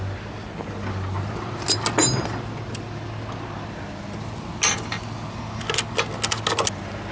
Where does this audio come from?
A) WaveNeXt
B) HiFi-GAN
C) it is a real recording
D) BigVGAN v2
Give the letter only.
C